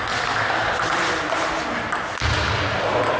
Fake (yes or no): no